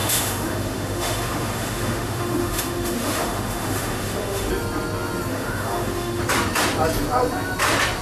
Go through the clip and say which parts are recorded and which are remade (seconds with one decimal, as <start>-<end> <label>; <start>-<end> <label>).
0.0-4.5 remade; 4.5-5.3 recorded; 5.3-6.2 remade; 6.2-8.0 recorded